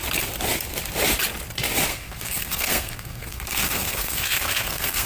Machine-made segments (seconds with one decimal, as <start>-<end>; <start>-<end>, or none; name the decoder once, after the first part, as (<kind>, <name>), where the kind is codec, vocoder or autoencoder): 1.9-5.1 (codec, SNAC)